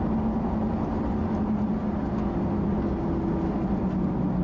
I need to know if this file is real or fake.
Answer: real